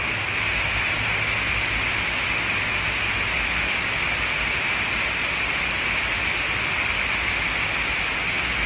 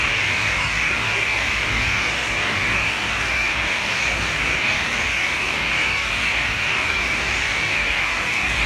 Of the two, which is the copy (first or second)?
second